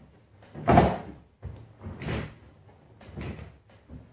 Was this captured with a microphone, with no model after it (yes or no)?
yes